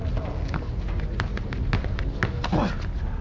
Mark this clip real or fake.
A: real